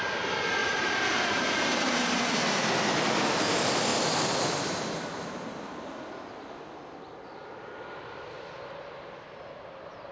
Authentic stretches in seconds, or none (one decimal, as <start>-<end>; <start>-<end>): 0.0-0.6; 2.2-10.1

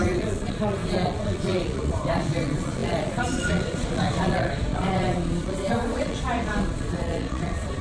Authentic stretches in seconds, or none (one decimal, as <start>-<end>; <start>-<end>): none

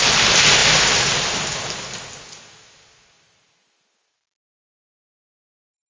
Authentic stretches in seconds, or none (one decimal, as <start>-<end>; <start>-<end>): 0.0-5.9

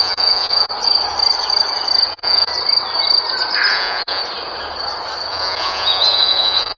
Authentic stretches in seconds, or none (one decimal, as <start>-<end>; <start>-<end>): 0.7-2.1; 2.5-3.7; 4.2-5.3

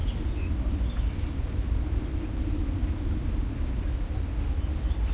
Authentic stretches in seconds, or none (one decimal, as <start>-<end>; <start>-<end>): 0.0-5.1

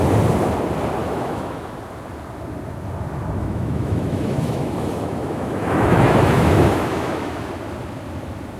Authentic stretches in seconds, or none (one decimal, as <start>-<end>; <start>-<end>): 0.0-1.0; 1.7-3.4; 7.5-8.6